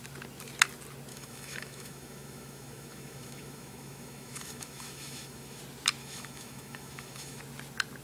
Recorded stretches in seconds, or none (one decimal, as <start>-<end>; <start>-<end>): 0.0-1.1; 5.6-6.0; 7.4-8.0